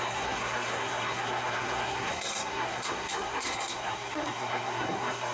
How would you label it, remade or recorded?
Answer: remade